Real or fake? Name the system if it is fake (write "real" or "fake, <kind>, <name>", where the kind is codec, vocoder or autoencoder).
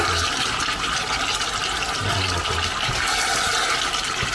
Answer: real